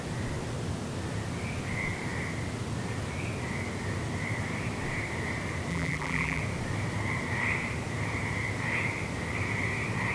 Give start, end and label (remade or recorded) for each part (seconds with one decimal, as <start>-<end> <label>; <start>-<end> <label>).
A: 0.0-5.7 recorded; 5.7-6.4 remade; 6.4-10.1 recorded